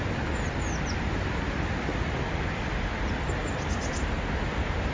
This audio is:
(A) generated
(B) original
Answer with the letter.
B